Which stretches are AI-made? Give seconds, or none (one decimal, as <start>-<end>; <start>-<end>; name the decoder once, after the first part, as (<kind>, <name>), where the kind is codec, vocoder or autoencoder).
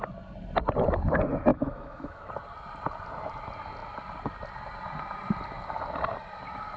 1.5-2.3 (autoencoder, DAC-VAE)